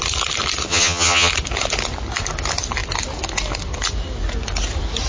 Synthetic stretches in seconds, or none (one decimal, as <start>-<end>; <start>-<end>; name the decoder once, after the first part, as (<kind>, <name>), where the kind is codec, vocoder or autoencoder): 0.7-1.3 (vocoder, HiFi-GAN)